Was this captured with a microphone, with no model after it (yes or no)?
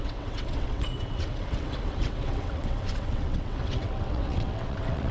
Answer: no